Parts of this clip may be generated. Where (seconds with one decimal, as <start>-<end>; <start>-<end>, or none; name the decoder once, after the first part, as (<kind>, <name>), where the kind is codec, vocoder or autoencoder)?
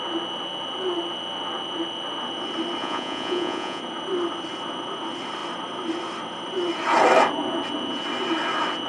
2.8-3.8 (vocoder, Vocos)